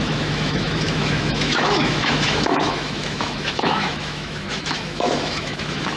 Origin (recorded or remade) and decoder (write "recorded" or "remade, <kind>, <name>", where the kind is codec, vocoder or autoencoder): remade, autoencoder, DAC-VAE